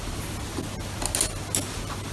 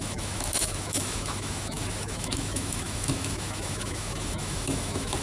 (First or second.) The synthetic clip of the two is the second